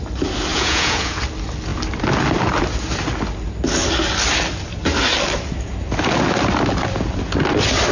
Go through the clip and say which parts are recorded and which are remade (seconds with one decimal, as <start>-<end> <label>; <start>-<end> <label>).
0.0-0.5 recorded; 0.5-1.2 remade; 1.2-7.9 recorded